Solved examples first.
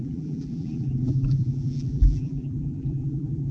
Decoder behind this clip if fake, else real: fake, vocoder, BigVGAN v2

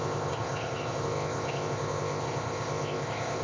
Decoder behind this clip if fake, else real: fake, codec, ZipCodec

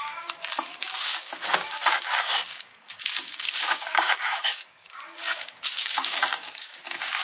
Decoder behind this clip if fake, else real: fake, codec, DAC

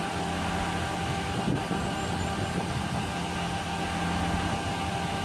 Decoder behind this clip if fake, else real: real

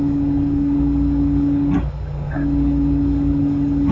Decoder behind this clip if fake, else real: fake, codec, DAC